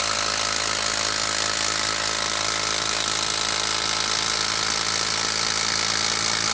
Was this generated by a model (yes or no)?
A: no